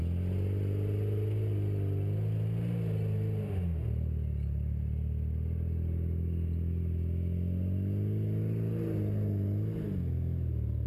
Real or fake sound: real